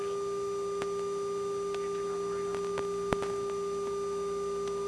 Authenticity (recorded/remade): recorded